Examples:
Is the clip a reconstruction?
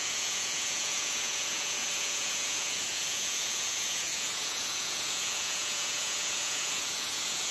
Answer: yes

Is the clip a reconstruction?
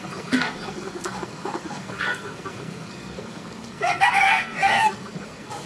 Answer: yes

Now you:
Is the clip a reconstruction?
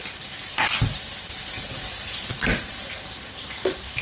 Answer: no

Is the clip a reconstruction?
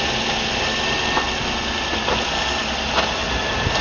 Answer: no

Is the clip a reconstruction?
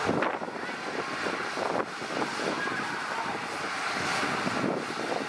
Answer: no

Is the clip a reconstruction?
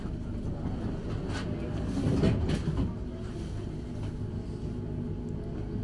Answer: no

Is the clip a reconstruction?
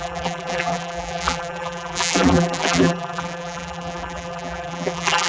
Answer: yes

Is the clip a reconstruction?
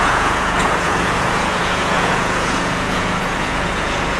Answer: yes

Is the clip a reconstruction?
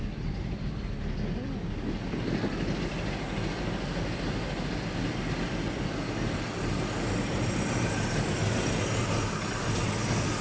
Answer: no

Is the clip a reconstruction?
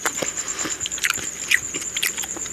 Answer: yes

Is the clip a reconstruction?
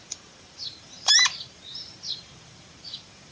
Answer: yes